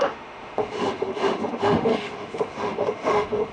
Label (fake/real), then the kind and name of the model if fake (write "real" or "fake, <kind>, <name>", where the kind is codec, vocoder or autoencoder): fake, autoencoder, DAC-VAE